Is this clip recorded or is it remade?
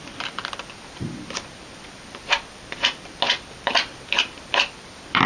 remade